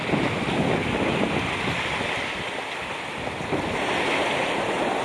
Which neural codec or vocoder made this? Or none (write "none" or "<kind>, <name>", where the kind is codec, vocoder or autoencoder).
none